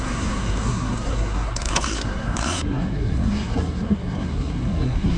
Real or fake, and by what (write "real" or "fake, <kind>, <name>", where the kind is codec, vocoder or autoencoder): fake, codec, SNAC